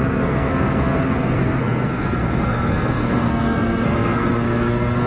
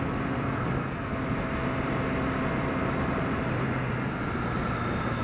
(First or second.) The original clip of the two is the second